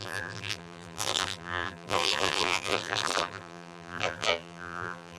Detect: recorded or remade remade